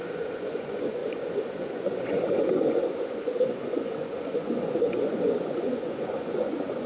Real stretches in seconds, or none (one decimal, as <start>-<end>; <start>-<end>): none